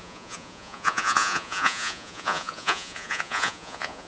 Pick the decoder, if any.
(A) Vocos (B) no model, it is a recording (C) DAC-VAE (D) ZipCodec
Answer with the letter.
A